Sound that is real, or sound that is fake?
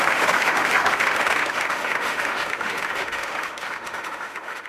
fake